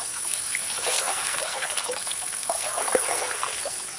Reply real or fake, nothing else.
fake